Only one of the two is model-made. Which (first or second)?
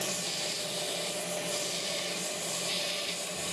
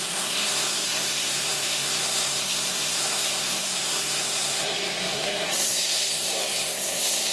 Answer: second